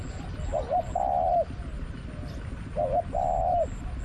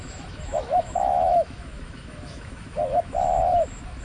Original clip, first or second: first